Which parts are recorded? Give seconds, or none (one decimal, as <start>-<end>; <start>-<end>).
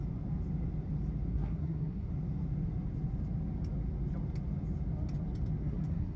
0.0-1.3; 2.1-5.6